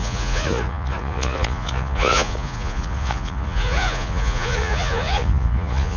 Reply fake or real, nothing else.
fake